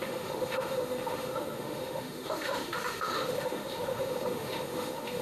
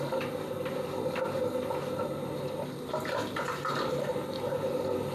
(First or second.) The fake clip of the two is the first